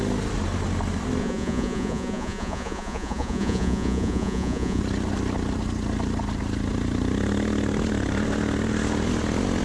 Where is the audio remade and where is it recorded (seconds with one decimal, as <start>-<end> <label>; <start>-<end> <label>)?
0.0-1.2 recorded; 1.2-4.8 remade; 4.8-9.6 recorded